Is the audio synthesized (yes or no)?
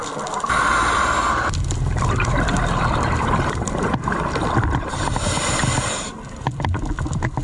yes